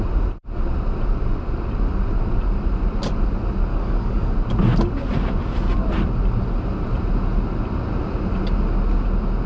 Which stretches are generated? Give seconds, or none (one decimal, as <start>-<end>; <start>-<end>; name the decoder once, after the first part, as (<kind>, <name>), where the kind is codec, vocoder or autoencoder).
3.7-4.3 (codec, DAC)